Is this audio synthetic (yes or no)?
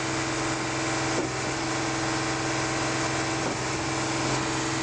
no